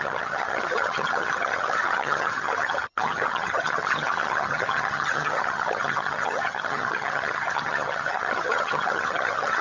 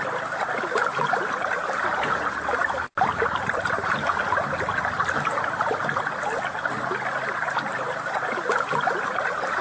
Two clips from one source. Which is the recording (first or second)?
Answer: second